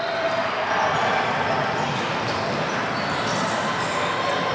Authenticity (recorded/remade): recorded